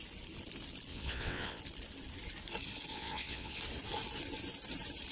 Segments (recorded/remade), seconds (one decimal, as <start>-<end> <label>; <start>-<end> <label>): 0.0-0.9 recorded; 0.9-1.6 remade; 1.6-2.9 recorded; 2.9-3.6 remade; 3.6-5.1 recorded